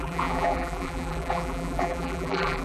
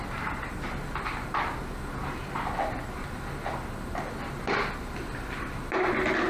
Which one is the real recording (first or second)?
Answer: second